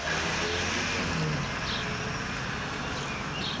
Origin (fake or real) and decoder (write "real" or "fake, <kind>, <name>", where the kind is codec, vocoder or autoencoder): real